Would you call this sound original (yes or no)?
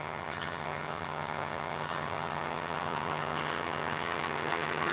no